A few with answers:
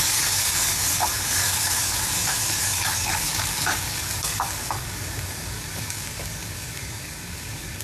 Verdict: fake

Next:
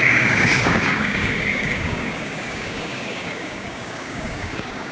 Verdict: fake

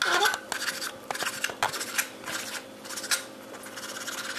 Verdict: real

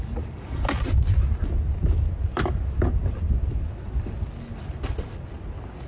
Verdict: real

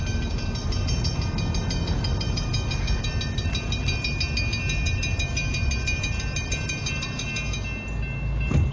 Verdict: real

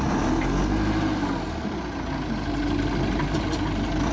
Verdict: real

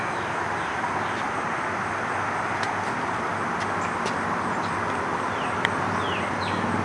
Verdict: real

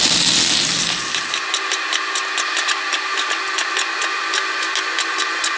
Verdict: real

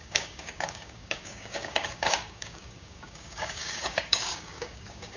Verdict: fake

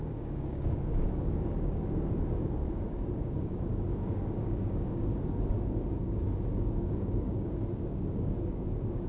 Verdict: fake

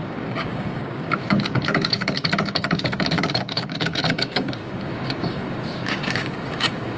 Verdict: fake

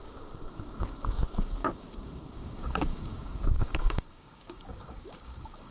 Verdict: fake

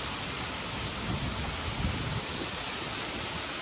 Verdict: real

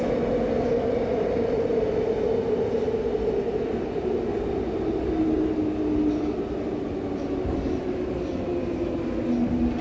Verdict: real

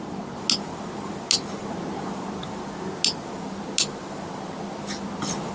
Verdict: real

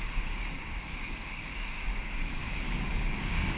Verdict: fake